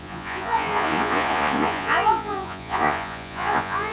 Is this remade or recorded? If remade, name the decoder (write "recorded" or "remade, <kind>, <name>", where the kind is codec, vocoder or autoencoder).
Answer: remade, vocoder, Vocos